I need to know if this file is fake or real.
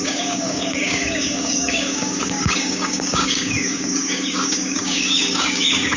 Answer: fake